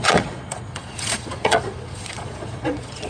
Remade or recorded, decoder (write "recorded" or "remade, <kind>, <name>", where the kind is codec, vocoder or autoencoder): remade, vocoder, Vocos